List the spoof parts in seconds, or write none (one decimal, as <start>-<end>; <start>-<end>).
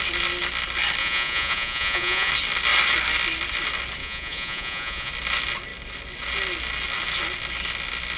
1.0-2.3; 4.0-5.1